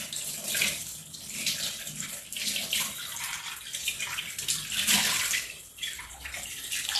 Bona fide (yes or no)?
no